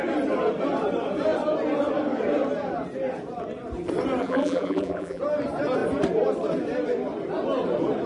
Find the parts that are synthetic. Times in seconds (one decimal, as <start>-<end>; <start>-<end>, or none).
4.2-5.2